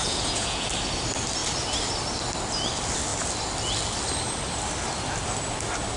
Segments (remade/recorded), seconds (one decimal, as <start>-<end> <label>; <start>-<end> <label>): 0.0-0.7 remade; 0.7-6.0 recorded